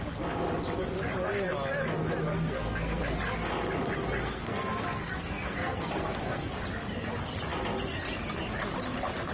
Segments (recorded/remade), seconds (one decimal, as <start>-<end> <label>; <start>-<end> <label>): 0.0-2.3 recorded; 2.3-3.0 remade; 3.0-4.2 recorded; 4.2-6.5 remade; 6.5-9.3 recorded